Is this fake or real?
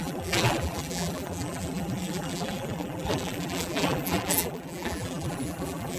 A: fake